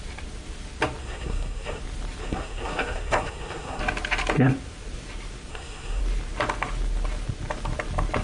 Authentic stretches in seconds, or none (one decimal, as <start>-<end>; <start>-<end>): 0.0-1.0; 1.8-2.2; 3.8-5.5; 6.0-8.2